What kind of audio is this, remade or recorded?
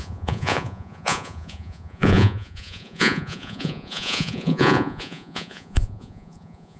remade